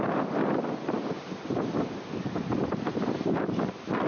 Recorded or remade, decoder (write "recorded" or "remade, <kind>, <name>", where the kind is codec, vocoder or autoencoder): remade, vocoder, BigVGAN v2